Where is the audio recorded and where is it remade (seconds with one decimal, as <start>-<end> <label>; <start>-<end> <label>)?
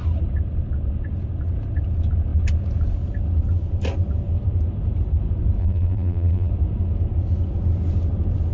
0.0-5.6 recorded; 5.6-6.5 remade; 6.5-8.5 recorded